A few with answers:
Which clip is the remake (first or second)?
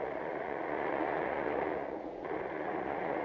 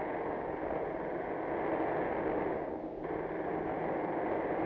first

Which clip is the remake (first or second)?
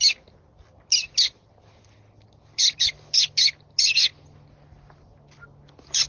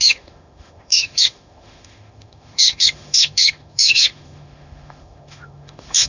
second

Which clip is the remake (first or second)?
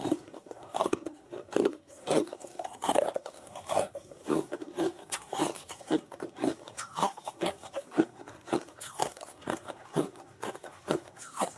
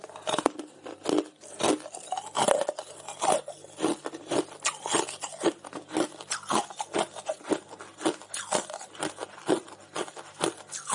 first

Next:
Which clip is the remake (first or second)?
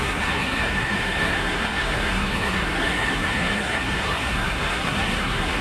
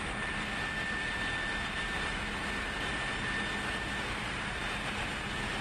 first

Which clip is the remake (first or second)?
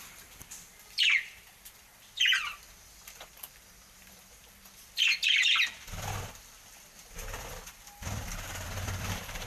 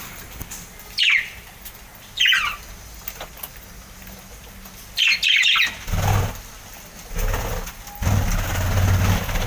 first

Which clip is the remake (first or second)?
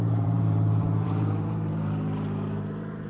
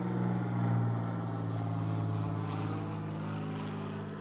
first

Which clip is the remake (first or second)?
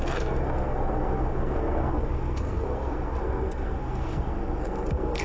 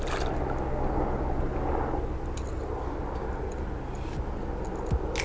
first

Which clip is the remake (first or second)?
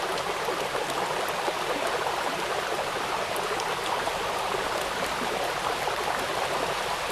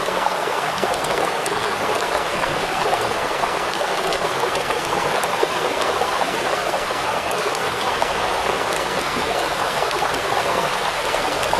second